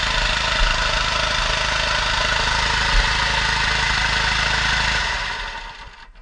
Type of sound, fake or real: real